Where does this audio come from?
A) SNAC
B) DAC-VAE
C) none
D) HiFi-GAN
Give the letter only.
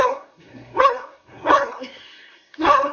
A